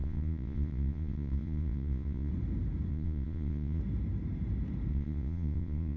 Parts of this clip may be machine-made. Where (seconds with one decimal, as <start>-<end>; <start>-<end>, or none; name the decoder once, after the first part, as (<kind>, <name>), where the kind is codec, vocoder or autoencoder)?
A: 0.0-2.3 (vocoder, Vocos); 2.9-3.8; 4.9-6.0